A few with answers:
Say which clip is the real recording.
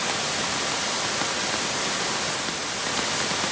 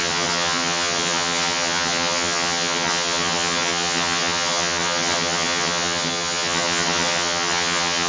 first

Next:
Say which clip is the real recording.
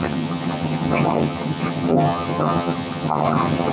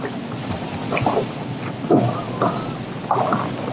second